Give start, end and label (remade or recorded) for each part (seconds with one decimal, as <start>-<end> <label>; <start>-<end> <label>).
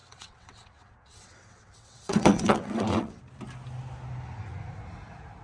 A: 0.0-3.2 remade; 3.2-5.4 recorded